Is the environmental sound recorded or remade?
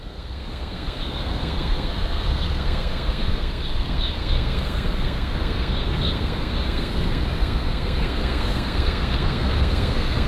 remade